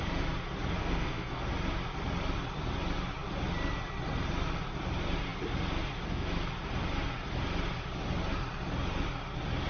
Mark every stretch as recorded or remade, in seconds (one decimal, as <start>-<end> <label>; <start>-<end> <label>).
0.0-0.8 recorded; 0.8-1.5 remade; 1.5-9.7 recorded